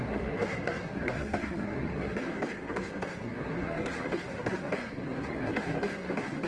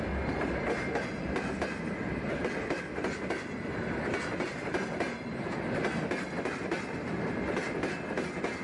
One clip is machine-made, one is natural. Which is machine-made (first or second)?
first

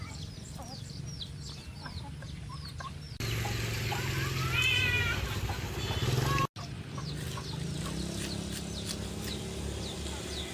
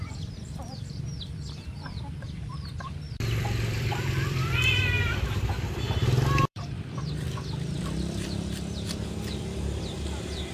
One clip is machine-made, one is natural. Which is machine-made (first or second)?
second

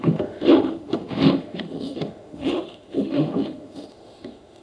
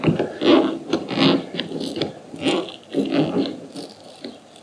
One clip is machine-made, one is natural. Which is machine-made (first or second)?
first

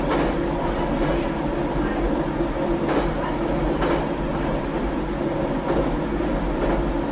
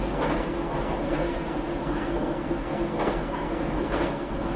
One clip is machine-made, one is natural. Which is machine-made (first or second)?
second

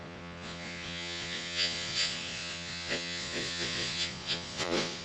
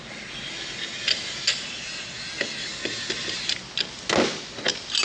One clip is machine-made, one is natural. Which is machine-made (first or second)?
first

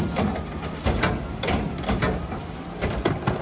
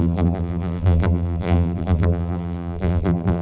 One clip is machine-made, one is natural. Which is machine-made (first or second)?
second